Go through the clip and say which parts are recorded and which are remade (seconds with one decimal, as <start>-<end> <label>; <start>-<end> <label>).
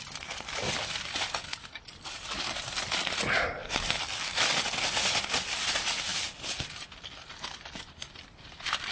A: 0.0-8.9 recorded